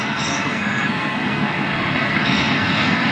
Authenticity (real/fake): fake